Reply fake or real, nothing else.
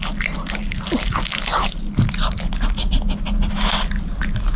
real